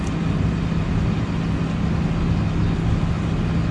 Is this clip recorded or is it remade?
recorded